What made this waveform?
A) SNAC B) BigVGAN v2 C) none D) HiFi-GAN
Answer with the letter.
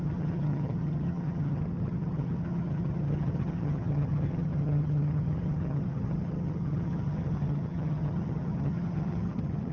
D